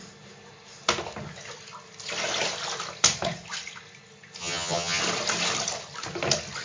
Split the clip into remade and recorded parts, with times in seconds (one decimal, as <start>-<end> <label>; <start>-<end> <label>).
0.0-4.4 recorded; 4.4-5.0 remade; 5.0-6.6 recorded